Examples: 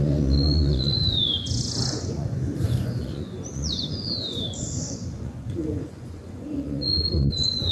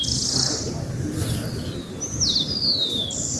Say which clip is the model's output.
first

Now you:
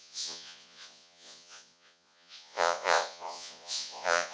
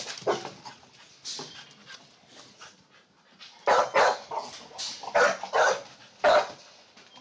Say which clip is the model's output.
first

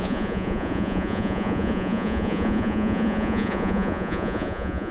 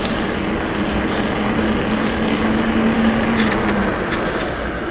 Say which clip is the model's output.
first